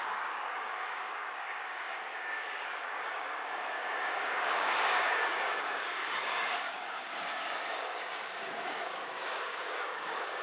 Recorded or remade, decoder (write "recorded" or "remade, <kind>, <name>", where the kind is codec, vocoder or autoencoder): remade, codec, DAC